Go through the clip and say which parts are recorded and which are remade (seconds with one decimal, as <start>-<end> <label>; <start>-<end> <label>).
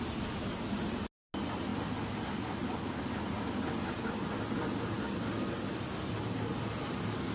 0.0-7.3 recorded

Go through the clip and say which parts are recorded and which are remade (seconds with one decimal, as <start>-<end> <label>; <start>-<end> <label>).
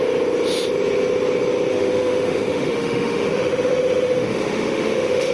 0.0-1.7 recorded; 1.7-5.3 remade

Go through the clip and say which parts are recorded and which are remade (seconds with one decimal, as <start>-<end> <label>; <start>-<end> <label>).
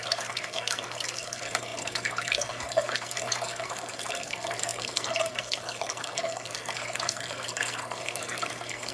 0.0-8.9 remade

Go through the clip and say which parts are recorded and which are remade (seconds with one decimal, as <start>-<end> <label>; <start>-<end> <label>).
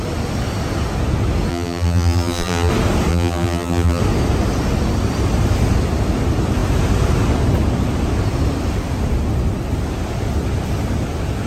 0.0-1.5 recorded; 1.5-2.7 remade; 2.7-3.1 recorded; 3.1-4.0 remade; 4.0-11.5 recorded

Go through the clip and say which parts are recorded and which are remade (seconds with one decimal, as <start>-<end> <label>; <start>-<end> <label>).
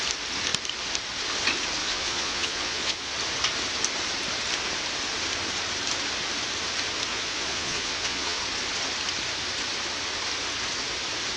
0.0-1.8 recorded; 1.8-3.1 remade; 3.1-7.1 recorded; 7.1-8.4 remade; 8.4-11.4 recorded